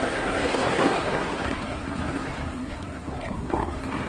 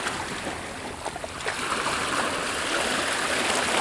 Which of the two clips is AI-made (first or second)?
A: first